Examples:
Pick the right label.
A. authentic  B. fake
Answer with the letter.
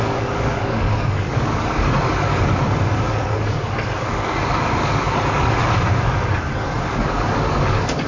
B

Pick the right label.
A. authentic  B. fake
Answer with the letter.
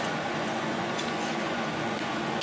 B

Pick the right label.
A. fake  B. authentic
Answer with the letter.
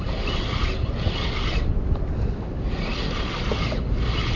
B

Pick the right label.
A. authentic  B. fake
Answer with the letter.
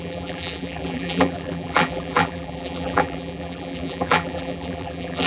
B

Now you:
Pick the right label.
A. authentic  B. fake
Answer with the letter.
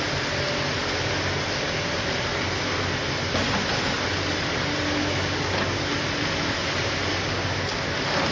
A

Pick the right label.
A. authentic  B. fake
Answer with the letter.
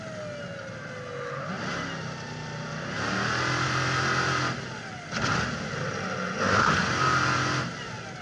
A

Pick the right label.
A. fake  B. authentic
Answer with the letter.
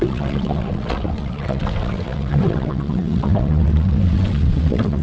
A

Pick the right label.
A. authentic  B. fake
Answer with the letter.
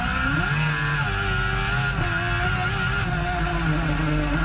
A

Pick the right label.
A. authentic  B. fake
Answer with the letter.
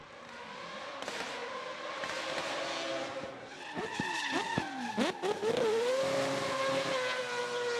A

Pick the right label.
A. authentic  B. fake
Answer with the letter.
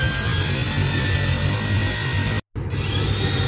A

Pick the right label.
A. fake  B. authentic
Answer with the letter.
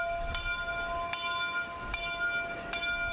B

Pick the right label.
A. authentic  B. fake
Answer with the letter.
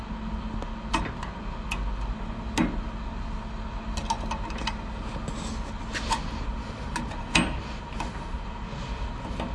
A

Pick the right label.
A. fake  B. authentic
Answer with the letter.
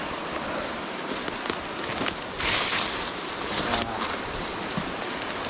B